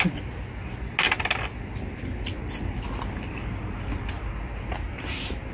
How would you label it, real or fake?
real